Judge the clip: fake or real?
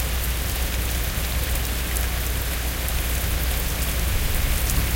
real